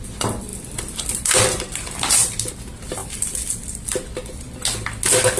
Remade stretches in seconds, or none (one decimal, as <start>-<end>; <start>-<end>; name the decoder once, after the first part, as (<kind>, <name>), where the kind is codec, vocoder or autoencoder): 0.5-2.5 (vocoder, BigVGAN v2); 3.0-4.4